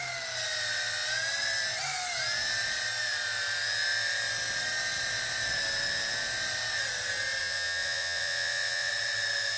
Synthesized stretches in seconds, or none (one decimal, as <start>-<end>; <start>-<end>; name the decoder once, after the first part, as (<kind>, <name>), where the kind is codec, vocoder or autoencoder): 7.4-8.9 (vocoder, Vocos)